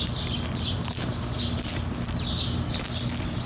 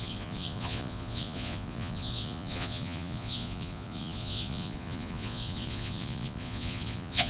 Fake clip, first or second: second